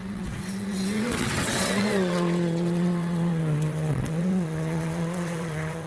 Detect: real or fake fake